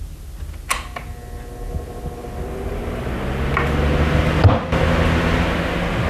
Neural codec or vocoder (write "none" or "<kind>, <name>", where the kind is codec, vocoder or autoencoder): none